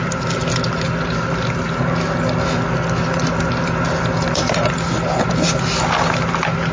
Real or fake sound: real